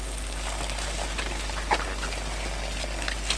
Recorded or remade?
recorded